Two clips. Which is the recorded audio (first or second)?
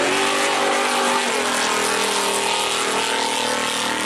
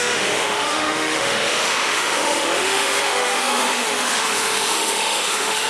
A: first